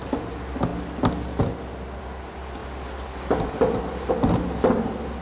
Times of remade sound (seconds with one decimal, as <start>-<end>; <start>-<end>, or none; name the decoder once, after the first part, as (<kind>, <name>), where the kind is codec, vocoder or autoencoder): none